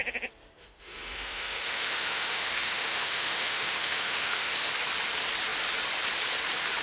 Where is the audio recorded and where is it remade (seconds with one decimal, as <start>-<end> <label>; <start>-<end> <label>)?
0.0-0.6 recorded; 0.6-4.7 remade; 4.7-6.8 recorded